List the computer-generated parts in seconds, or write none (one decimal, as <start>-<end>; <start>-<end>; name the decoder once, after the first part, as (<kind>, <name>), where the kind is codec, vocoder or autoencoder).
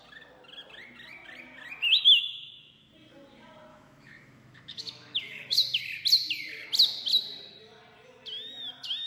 2.0-2.9 (autoencoder, DAC-VAE); 3.7-5.8